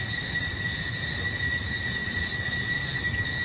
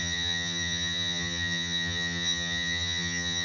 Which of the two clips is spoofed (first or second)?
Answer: second